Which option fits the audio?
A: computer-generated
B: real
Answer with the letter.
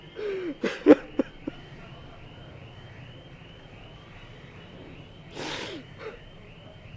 B